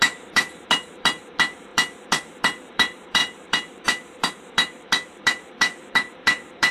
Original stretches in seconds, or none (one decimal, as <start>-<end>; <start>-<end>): none